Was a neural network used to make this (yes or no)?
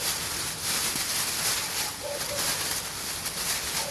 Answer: no